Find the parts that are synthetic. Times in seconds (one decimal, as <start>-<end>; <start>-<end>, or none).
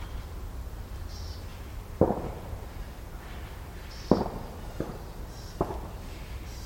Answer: none